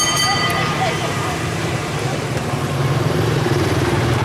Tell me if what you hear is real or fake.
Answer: fake